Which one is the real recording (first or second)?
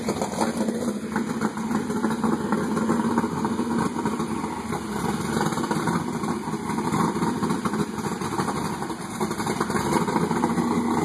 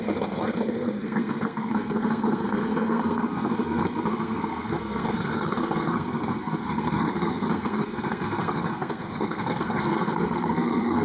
first